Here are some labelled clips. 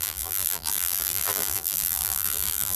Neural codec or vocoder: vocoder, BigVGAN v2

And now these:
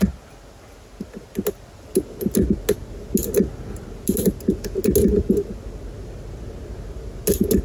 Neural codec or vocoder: none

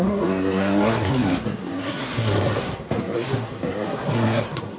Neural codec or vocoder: codec, SNAC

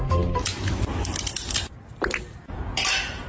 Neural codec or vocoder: vocoder, BigVGAN v2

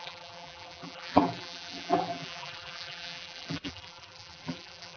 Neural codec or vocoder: vocoder, BigVGAN v2